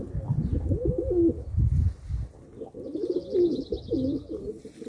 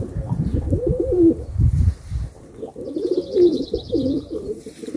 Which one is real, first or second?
first